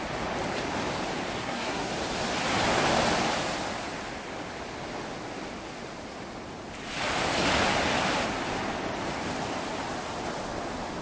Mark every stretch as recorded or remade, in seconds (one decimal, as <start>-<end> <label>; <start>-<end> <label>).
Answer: 0.0-1.4 recorded; 1.4-1.9 remade; 1.9-11.0 recorded